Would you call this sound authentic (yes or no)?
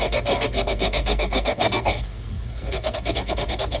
no